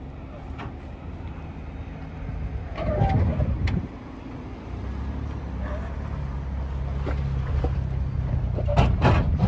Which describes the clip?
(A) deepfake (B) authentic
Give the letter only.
B